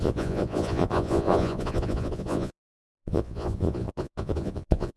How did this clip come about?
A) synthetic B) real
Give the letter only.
A